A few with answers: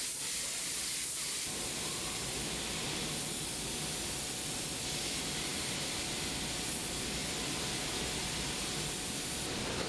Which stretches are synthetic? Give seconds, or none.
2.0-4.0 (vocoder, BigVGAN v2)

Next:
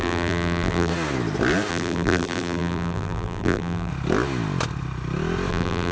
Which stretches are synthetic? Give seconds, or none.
0.0-0.9 (vocoder, BigVGAN v2); 1.7-3.9; 5.5-5.9

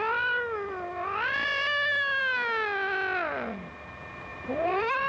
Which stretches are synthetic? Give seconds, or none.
4.3-5.1 (vocoder, BigVGAN v2)

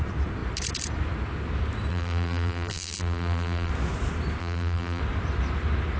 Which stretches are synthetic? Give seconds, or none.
1.9-3.7 (vocoder, BigVGAN v2); 4.4-5.0

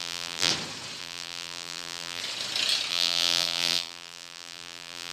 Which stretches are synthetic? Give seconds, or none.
0.0-0.5 (vocoder, BigVGAN v2); 1.0-2.2; 2.9-5.1